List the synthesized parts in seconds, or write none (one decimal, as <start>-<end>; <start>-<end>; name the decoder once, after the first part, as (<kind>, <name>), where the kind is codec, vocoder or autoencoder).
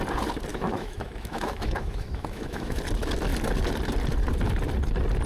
0.5-2.8 (autoencoder, DAC-VAE)